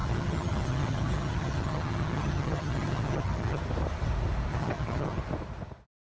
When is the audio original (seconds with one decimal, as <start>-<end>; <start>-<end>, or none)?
3.6-4.5; 5.2-6.0